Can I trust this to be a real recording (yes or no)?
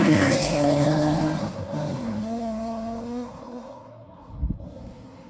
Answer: no